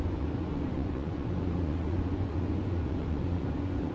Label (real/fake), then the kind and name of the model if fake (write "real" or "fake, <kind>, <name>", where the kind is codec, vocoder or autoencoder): fake, vocoder, Vocos